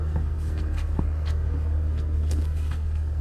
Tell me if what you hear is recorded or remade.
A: remade